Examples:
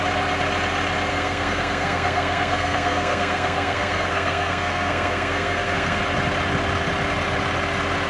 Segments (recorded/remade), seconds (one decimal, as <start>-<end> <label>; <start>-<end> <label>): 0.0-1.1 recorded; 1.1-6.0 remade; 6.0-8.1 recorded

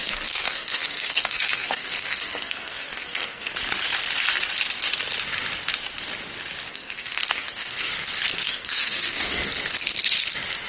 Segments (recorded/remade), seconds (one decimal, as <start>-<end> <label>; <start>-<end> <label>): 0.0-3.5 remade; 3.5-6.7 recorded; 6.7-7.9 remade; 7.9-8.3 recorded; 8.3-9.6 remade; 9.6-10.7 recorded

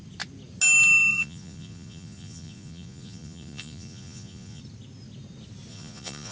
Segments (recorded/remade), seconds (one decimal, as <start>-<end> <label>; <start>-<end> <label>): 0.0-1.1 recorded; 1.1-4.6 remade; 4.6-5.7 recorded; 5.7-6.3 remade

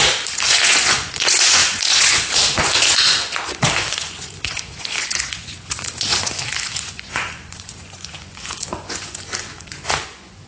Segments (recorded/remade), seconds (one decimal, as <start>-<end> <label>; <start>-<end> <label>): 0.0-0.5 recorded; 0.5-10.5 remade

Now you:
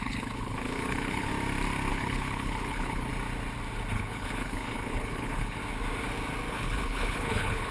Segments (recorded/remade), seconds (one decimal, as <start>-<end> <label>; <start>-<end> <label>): 0.0-1.3 remade; 1.3-1.9 recorded; 1.9-3.1 remade; 3.1-3.9 recorded; 3.9-5.6 remade; 5.6-6.5 recorded; 6.5-7.7 remade

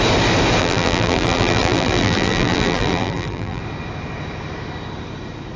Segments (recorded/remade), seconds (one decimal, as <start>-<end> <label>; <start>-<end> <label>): 0.0-0.6 recorded; 0.6-3.6 remade; 3.6-5.6 recorded

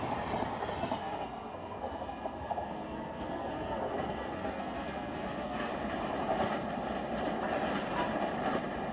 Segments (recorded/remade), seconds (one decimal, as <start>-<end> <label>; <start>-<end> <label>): 0.0-1.0 recorded; 1.0-5.7 remade; 5.7-8.9 recorded

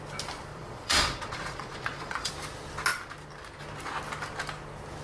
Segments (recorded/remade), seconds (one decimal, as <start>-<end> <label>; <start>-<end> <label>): 0.0-0.5 recorded; 0.5-2.3 remade; 2.3-5.0 recorded